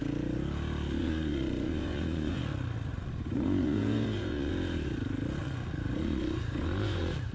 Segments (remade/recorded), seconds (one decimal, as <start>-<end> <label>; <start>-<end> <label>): 0.0-1.0 recorded; 1.0-2.4 remade; 2.4-2.9 recorded; 2.9-4.5 remade; 4.5-5.4 recorded; 5.4-7.3 remade